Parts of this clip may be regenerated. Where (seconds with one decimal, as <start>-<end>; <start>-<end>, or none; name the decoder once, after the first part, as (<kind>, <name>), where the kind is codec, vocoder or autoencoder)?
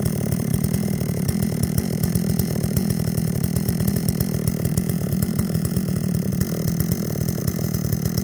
0.0-6.3 (vocoder, BigVGAN v2); 7.4-8.2